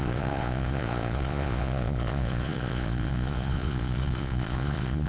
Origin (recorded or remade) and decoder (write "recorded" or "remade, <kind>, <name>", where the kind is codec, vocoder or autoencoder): remade, vocoder, Vocos